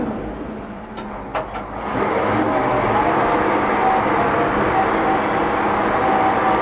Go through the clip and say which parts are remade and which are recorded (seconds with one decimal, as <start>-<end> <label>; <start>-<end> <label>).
0.0-6.6 recorded